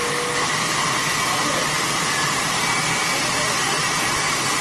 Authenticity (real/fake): real